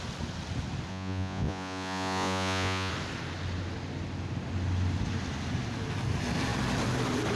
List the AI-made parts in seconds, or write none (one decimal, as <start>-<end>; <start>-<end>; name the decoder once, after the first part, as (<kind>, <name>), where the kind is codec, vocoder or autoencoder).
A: 0.9-2.9 (vocoder, Vocos)